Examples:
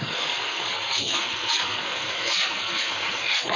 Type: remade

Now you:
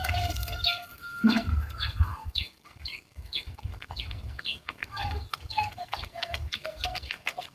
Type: remade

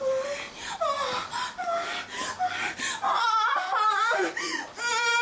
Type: recorded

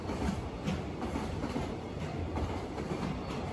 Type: recorded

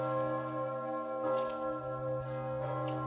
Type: recorded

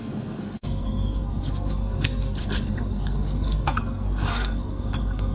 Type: remade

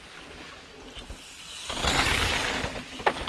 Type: recorded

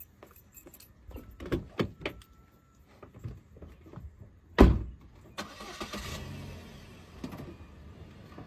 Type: recorded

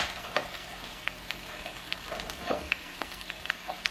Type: remade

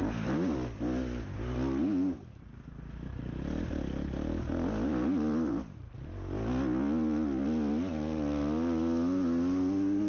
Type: recorded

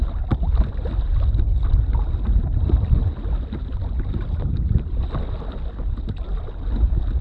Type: recorded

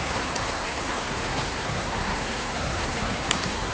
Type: remade